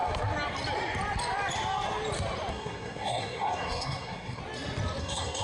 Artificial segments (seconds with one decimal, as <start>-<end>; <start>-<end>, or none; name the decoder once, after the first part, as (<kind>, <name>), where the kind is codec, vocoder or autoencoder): 2.5-4.4 (codec, SNAC); 5.0-5.4